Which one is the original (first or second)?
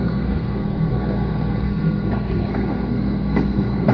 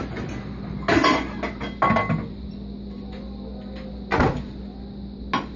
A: second